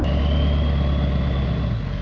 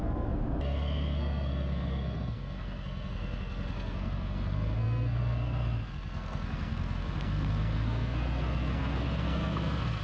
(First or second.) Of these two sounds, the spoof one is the second